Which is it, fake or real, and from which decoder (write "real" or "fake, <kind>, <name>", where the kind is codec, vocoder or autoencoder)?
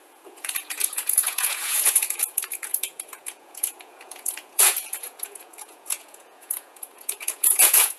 fake, vocoder, Vocos